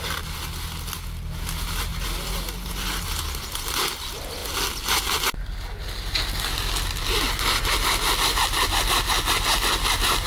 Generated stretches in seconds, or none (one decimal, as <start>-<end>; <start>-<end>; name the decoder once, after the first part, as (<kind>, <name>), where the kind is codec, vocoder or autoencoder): none